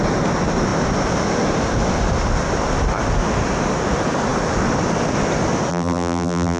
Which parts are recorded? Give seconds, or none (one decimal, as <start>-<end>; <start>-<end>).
0.0-5.7